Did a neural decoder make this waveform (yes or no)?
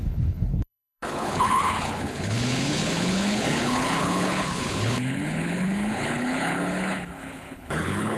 yes